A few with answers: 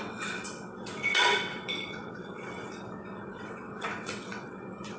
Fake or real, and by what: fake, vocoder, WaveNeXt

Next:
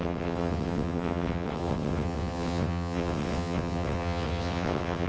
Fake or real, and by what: fake, vocoder, WaveNeXt